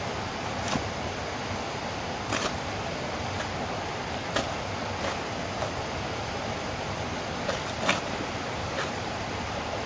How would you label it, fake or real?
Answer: real